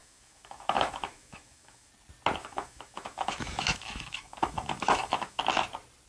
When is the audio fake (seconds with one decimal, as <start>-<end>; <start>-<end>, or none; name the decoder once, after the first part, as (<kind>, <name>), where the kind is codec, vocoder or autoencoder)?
0.0-1.9 (autoencoder, DAC-VAE); 2.4-5.4